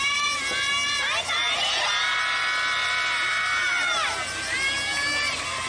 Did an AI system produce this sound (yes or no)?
no